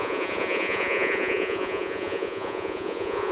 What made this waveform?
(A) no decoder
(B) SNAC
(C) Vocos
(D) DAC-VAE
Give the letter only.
C